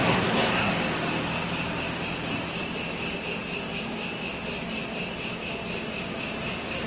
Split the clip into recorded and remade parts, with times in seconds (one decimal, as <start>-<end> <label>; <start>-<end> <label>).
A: 0.0-0.7 remade; 0.7-6.9 recorded

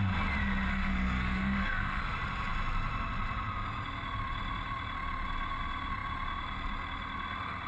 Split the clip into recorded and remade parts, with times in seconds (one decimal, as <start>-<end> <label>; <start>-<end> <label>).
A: 0.0-0.7 recorded; 0.7-2.0 remade; 2.0-7.7 recorded

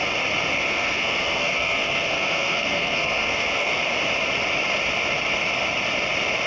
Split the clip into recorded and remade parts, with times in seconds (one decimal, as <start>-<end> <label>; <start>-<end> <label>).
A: 0.0-0.5 recorded; 0.5-3.8 remade; 3.8-6.5 recorded

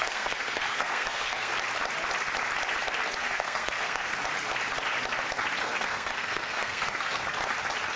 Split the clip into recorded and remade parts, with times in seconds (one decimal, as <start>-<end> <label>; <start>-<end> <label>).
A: 0.0-1.5 remade; 1.5-3.2 recorded; 3.2-4.1 remade; 4.1-5.6 recorded; 5.6-7.2 remade; 7.2-8.0 recorded